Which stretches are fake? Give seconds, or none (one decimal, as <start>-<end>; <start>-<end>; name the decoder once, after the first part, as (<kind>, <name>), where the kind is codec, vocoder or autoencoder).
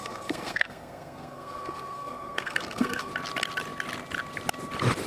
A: 0.0-3.1 (codec, SNAC)